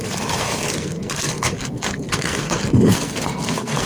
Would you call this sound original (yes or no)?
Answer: no